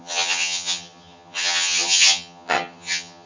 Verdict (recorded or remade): remade